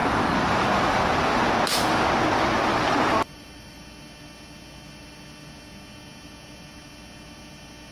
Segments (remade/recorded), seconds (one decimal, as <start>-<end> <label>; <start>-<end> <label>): 0.0-1.4 remade; 1.4-2.7 recorded; 2.7-3.8 remade; 3.8-7.9 recorded

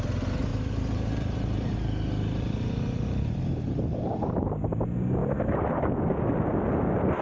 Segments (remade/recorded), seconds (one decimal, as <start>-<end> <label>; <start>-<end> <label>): 0.0-0.5 recorded; 0.5-4.3 remade; 4.3-5.2 recorded; 5.2-5.8 remade; 5.8-7.2 recorded

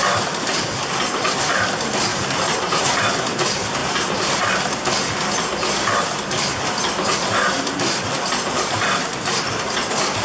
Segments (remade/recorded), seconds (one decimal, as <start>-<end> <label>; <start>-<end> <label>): 0.0-2.1 recorded; 2.1-3.0 remade; 3.0-3.8 recorded; 3.8-4.3 remade; 4.3-7.4 recorded; 7.4-9.4 remade; 9.4-10.2 recorded

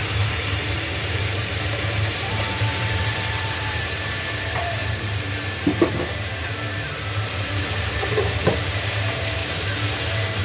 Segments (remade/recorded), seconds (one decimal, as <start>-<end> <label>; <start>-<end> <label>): 0.0-9.4 remade; 9.4-9.9 recorded; 9.9-10.4 remade

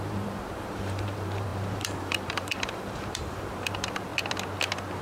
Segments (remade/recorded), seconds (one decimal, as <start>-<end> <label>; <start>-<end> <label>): 0.0-4.1 remade; 4.1-5.0 recorded

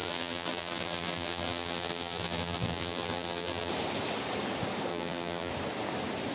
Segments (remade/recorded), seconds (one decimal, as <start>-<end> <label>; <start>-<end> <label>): 0.0-3.7 remade; 3.7-4.9 recorded; 4.9-5.5 remade; 5.5-6.3 recorded

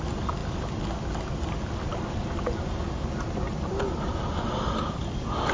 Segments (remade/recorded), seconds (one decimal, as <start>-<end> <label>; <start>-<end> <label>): 0.0-5.5 recorded

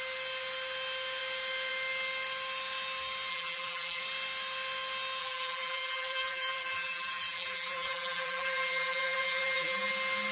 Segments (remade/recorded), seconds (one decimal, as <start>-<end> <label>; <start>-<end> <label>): 0.0-3.3 recorded; 3.3-4.0 remade; 4.0-5.2 recorded; 5.2-9.9 remade; 9.9-10.3 recorded